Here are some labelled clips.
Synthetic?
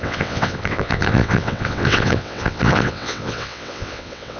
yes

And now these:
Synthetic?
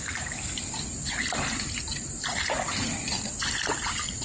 no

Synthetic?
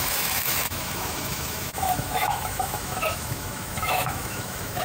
yes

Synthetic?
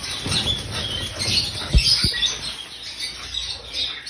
no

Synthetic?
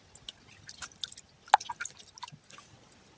no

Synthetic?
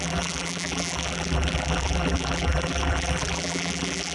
yes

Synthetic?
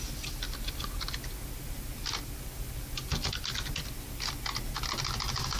no